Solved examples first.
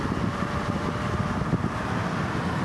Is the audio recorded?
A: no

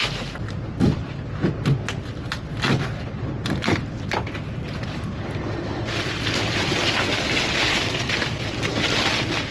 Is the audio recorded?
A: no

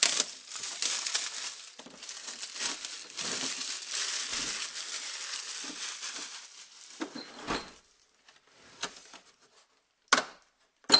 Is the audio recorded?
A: yes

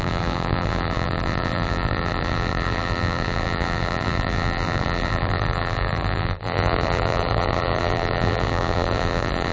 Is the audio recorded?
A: no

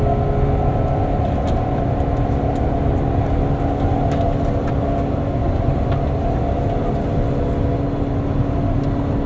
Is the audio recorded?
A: yes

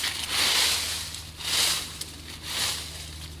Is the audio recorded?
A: yes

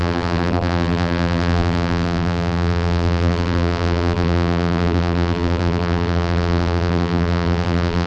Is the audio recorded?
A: no